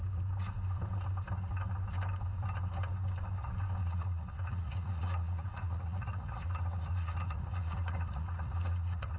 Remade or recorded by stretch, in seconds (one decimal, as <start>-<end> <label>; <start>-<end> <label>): 0.0-3.8 recorded; 3.8-9.2 remade